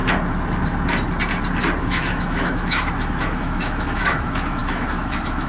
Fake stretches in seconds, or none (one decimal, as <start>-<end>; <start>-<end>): 1.8-5.5